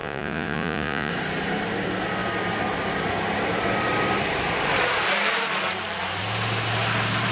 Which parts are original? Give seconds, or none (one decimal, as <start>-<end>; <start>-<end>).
1.1-7.3